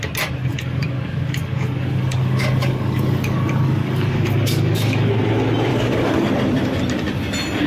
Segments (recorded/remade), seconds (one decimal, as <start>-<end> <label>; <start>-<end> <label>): 0.0-0.5 recorded; 0.5-5.1 remade; 5.1-5.7 recorded; 5.7-6.3 remade; 6.3-7.7 recorded